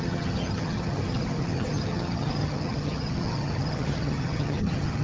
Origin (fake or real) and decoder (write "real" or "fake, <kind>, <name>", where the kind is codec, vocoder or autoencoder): fake, vocoder, HiFi-GAN